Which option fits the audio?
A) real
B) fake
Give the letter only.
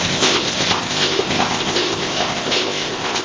B